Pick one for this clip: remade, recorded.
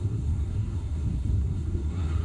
remade